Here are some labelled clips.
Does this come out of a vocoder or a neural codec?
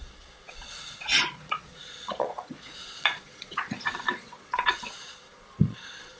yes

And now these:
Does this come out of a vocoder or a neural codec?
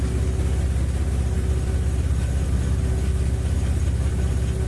no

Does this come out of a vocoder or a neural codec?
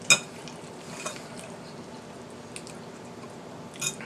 no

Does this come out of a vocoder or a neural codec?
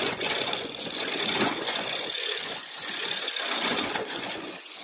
yes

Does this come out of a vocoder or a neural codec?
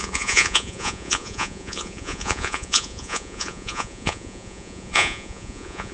yes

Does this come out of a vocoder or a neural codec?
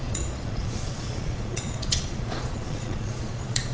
yes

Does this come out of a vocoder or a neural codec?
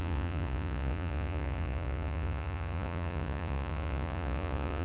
yes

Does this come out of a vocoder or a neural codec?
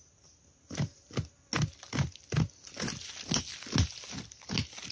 no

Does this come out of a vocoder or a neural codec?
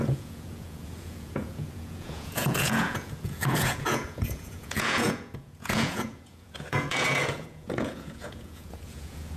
yes